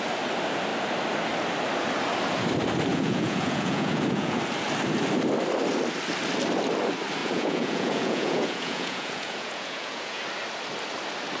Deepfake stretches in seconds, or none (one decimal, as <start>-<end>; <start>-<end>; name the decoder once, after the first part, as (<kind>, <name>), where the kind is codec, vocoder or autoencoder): 2.9-4.4 (vocoder, Vocos); 7.2-10.2

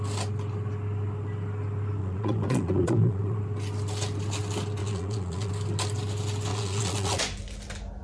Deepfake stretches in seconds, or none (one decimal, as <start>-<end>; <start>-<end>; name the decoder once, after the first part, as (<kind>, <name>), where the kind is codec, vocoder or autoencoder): 2.0-3.4 (vocoder, Vocos); 4.8-5.5; 6.5-7.2

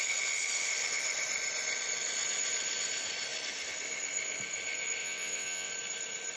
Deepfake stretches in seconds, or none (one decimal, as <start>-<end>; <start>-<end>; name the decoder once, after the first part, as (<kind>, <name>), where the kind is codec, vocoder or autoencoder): 5.0-5.7 (vocoder, WaveNeXt)

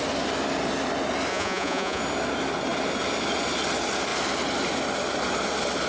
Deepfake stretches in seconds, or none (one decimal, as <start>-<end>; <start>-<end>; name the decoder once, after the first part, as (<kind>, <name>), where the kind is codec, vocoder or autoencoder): 1.3-2.0 (vocoder, Vocos)

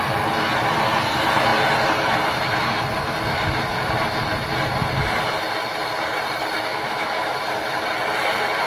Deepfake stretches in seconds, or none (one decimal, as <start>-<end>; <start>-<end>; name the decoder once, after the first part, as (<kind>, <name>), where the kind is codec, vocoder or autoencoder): 6.7-7.4 (autoencoder, DAC-VAE)